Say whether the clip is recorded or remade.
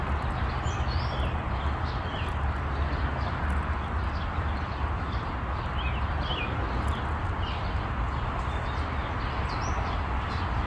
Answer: recorded